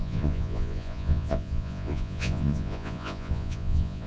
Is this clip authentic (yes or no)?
no